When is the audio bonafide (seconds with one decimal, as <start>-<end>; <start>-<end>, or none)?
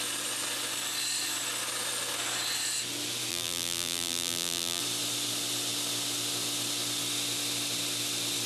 0.0-3.3; 4.8-8.5